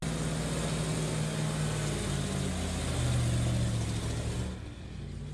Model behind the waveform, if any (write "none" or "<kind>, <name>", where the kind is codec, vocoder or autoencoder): none